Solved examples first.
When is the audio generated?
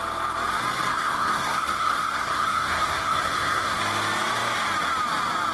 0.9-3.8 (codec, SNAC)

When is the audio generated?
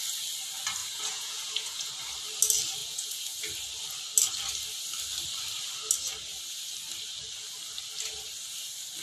0.8-1.9 (vocoder, Vocos); 2.8-3.4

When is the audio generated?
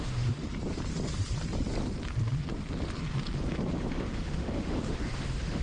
0.0-0.4 (autoencoder, DAC-VAE); 3.8-5.6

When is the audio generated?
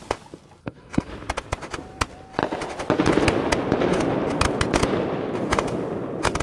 0.6-1.1 (codec, SNAC)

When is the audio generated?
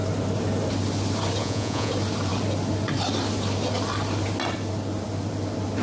1.4-1.9 (vocoder, Vocos)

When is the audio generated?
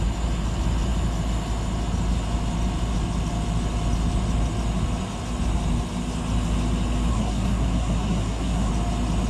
7.1-8.7 (codec, SNAC)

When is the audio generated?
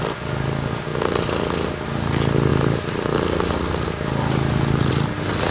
none